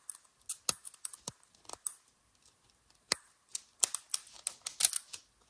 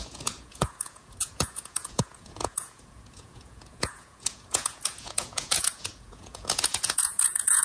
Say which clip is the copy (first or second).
second